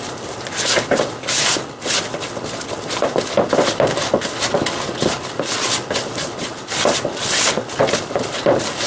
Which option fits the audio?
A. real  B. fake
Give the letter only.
A